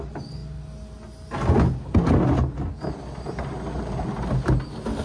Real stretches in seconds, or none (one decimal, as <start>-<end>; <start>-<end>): 0.0-5.0